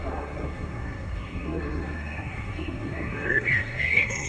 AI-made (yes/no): yes